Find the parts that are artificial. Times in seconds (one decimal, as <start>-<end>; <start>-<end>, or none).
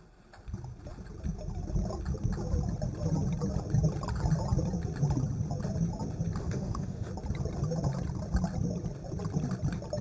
6.4-7.1